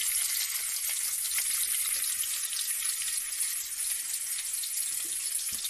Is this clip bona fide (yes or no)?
yes